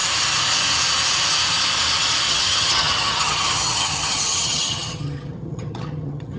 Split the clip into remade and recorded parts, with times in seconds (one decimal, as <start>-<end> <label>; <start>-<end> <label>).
0.0-2.3 recorded; 2.3-6.4 remade